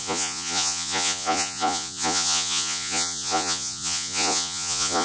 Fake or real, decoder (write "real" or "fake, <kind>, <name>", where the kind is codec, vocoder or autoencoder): fake, vocoder, Vocos